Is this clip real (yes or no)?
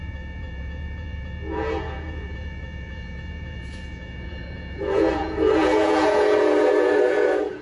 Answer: no